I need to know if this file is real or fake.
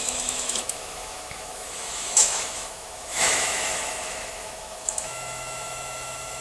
fake